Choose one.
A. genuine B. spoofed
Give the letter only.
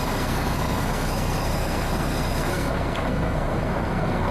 B